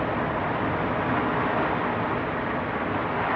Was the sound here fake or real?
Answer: real